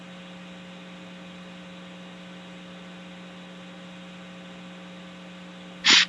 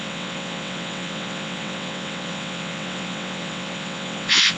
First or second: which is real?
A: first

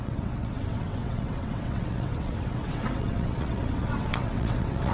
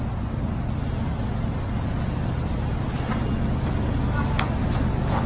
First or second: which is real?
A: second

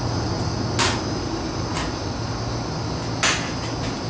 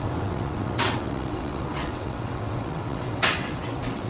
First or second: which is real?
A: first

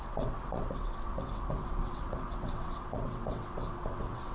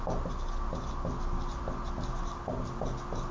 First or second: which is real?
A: second